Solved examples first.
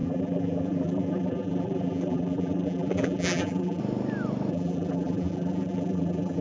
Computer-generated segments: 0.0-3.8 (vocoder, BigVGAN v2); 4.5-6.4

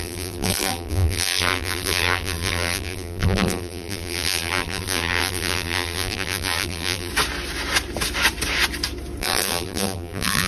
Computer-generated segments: 0.0-7.1 (vocoder, BigVGAN v2); 9.2-10.5

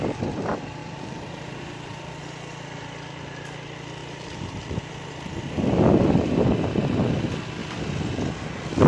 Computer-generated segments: 0.8-2.2 (vocoder, BigVGAN v2); 4.0-4.9

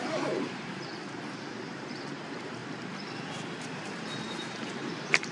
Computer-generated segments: 0.0-0.9 (vocoder, BigVGAN v2); 1.7-2.6; 3.8-5.3

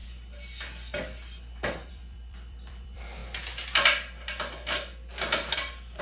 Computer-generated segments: 1.9-3.2 (vocoder, BigVGAN v2)

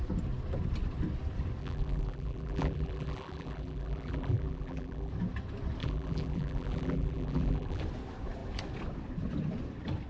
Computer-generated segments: 1.6-5.1 (vocoder, BigVGAN v2); 5.8-7.8

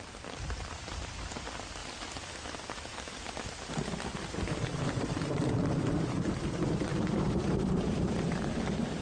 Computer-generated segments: 0.0-1.8 (vocoder, BigVGAN v2); 4.6-9.0